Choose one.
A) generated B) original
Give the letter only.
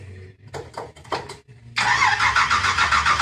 B